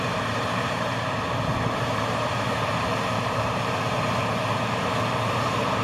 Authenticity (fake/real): fake